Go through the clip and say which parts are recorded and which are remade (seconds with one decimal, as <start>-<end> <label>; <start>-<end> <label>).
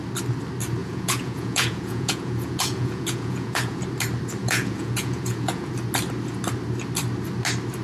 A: 0.0-0.8 recorded; 0.8-3.8 remade; 3.8-4.4 recorded; 4.4-5.7 remade; 5.7-7.8 recorded